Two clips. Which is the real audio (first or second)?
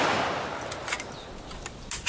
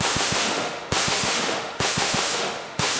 first